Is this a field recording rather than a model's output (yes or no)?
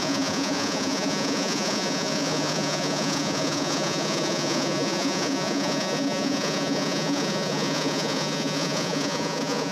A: no